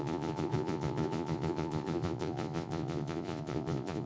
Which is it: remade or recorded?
remade